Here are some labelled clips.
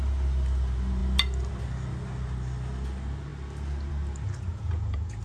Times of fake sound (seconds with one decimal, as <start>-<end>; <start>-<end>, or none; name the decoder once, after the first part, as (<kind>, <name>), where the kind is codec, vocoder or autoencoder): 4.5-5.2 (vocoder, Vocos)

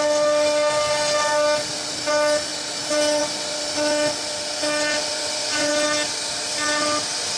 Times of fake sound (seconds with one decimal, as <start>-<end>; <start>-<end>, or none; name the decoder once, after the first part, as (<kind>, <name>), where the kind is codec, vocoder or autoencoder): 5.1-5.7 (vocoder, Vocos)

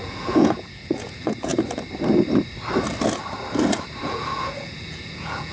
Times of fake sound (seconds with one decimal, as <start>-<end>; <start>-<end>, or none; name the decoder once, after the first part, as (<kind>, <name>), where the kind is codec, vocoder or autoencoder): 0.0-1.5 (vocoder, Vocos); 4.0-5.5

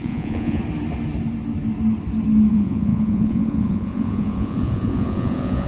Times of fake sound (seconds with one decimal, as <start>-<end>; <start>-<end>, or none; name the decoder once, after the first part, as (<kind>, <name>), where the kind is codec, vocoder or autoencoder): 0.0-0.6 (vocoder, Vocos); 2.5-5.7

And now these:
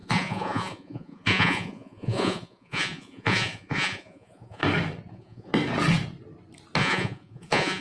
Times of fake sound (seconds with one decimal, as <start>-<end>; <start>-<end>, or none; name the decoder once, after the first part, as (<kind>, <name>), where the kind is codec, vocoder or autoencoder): 0.0-4.6 (vocoder, Vocos); 5.1-5.5; 6.8-7.8

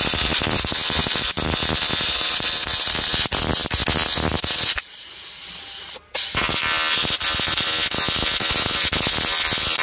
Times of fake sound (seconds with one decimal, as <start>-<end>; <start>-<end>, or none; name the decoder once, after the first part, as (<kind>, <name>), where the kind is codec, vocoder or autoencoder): none

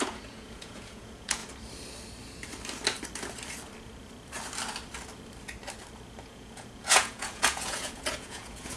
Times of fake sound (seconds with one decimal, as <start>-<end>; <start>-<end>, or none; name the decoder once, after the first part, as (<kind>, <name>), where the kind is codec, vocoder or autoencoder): 0.0-1.4 (vocoder, Vocos); 6.2-8.8